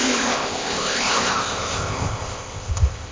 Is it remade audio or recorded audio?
remade